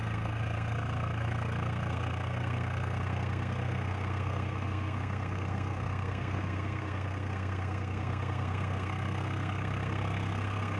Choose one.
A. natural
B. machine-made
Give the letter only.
B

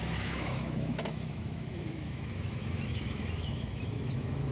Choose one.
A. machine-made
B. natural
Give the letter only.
A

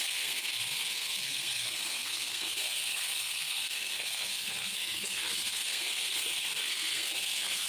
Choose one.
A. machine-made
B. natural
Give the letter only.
A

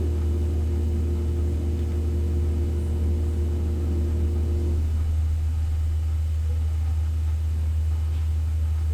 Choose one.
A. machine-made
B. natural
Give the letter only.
B